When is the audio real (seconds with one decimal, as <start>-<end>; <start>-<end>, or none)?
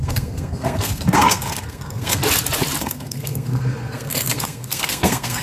2.2-2.8